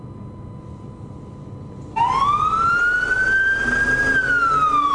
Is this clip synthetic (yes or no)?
yes